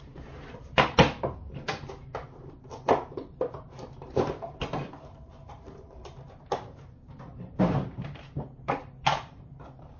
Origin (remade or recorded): remade